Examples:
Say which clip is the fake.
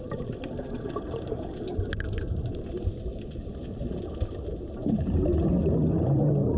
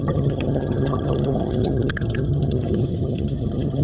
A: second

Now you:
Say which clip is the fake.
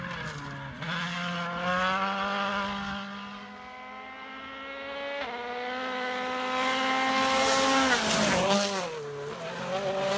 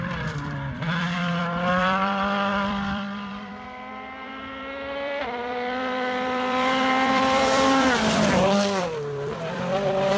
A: second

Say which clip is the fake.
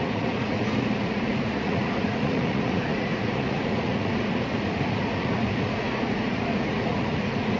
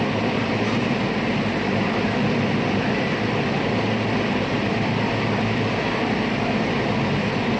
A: first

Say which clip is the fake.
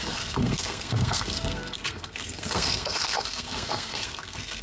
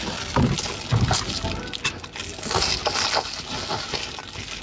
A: first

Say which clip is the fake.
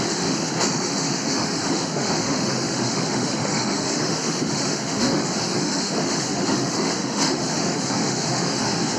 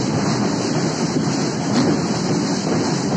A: first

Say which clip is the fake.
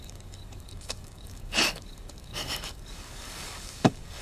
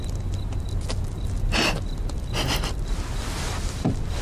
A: first